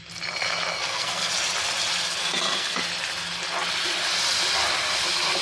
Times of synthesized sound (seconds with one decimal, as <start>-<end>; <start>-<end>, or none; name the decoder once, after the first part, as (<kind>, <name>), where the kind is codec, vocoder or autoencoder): 0.8-1.3 (codec, SNAC); 2.2-2.8